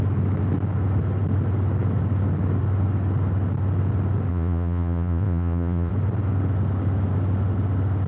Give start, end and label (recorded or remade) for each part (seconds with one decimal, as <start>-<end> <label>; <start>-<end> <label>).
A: 0.0-4.3 recorded; 4.3-5.9 remade; 5.9-8.1 recorded